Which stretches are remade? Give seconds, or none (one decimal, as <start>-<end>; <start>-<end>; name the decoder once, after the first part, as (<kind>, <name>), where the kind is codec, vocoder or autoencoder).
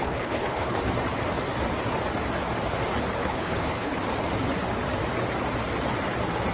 0.0-0.8 (codec, HILCodec); 3.2-4.0